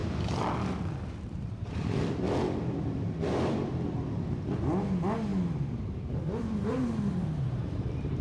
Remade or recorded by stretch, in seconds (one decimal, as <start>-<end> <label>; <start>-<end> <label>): 0.0-3.7 remade; 3.7-5.3 recorded; 5.3-8.2 remade